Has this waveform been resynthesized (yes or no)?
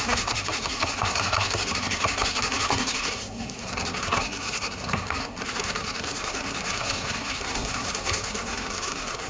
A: yes